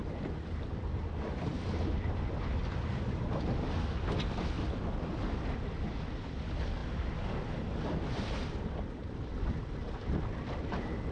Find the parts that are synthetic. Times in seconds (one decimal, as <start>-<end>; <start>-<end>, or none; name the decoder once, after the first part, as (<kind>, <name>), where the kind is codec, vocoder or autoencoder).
none